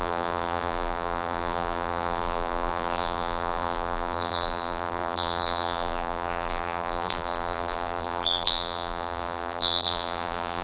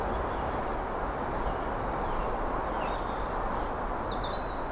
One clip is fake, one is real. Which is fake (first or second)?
first